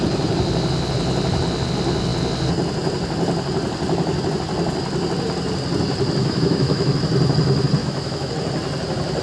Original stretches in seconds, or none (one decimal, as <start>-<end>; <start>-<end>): 0.0-6.2; 6.9-7.8; 8.3-9.2